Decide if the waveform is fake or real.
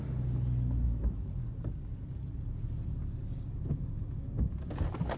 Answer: real